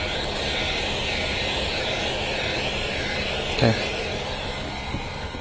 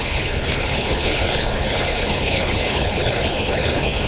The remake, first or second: second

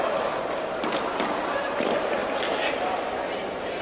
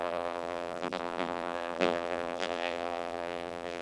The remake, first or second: second